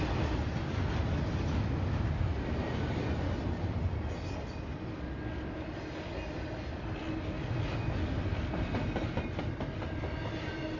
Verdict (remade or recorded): recorded